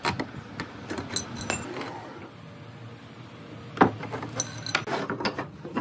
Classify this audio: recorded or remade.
recorded